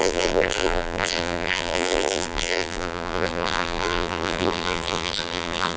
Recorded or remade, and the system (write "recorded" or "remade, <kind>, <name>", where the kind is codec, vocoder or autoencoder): remade, vocoder, BigVGAN v2